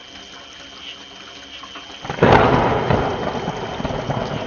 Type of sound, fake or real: real